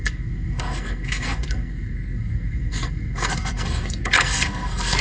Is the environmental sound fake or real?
fake